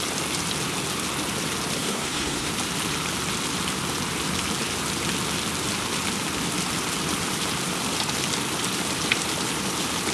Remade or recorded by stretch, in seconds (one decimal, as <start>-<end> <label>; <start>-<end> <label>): 0.0-1.8 recorded; 1.8-2.5 remade; 2.5-10.1 recorded